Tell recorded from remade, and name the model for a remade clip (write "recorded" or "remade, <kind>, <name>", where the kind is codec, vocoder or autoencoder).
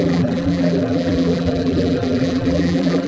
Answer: remade, vocoder, BigVGAN v2